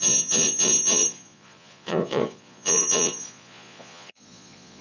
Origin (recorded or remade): remade